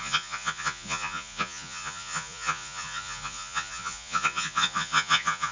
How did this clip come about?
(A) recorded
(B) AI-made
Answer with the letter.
B